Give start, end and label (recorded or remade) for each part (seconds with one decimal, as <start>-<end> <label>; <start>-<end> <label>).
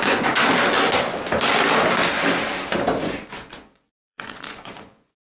0.0-0.4 remade; 0.4-3.0 recorded; 3.0-5.2 remade